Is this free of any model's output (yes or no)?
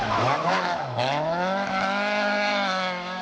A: no